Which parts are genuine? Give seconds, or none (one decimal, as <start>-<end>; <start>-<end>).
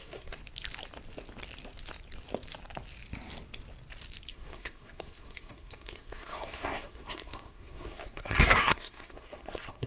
0.4-4.3